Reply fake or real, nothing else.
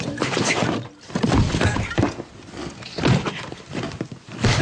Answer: fake